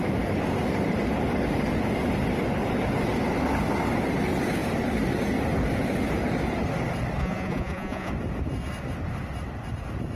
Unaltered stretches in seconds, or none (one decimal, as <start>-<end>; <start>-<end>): 0.0-7.2; 8.1-10.2